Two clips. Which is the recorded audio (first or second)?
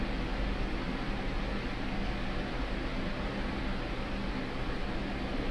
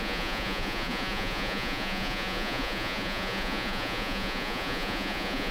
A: first